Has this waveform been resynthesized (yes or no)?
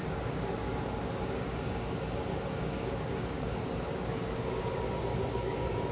yes